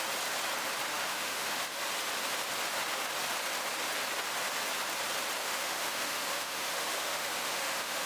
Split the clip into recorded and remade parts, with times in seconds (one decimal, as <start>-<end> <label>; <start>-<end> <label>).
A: 0.0-0.9 recorded; 0.9-1.8 remade; 1.8-5.4 recorded; 5.4-8.1 remade